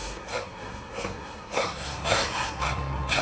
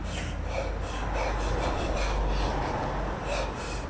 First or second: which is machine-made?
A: first